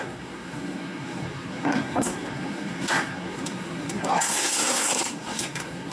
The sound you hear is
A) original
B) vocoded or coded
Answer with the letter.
B